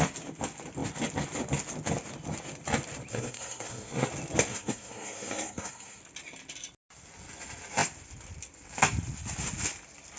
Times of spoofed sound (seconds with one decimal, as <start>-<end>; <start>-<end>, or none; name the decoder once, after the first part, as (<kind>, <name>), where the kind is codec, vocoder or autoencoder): 3.1-4.1 (codec, SNAC); 4.5-6.0